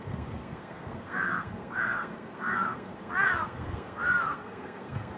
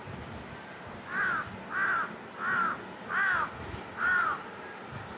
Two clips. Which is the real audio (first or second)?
second